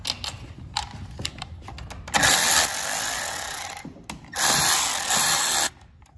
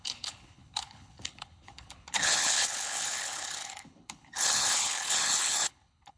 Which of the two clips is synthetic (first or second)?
second